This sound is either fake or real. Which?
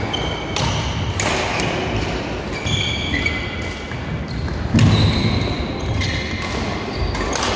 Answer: real